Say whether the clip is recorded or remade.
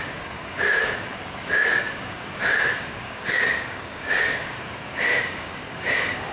remade